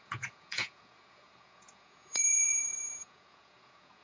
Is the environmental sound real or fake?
fake